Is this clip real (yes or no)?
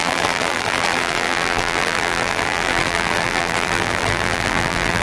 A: no